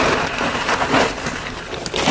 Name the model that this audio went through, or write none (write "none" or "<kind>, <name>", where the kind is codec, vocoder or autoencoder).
none